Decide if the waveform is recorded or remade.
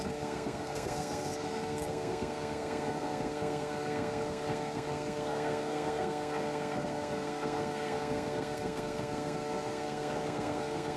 remade